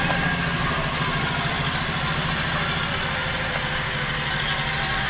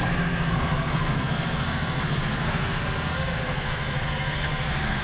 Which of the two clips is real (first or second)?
first